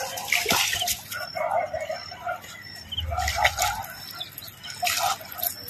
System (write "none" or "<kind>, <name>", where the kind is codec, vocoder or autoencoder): none